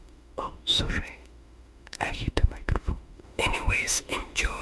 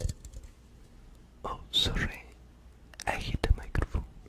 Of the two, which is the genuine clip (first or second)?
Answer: second